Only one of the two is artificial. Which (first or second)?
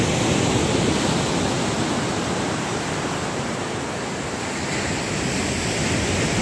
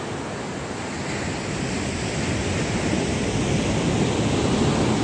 first